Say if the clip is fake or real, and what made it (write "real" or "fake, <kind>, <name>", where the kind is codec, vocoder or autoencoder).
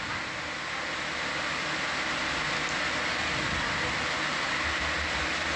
real